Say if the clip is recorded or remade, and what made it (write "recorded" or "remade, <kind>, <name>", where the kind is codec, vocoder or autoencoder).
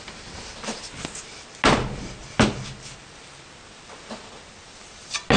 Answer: recorded